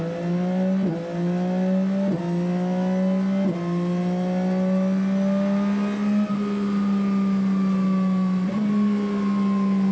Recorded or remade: recorded